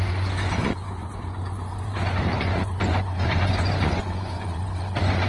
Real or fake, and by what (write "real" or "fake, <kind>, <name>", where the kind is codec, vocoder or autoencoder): fake, vocoder, Vocos